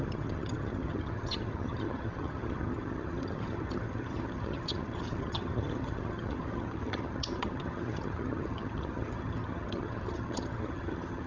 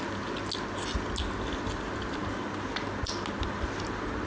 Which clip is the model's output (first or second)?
first